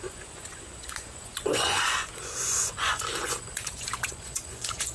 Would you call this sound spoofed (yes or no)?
yes